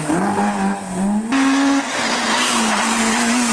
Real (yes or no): yes